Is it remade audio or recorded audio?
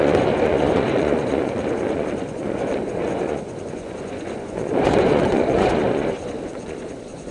remade